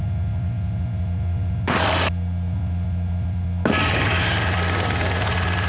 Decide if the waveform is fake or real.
real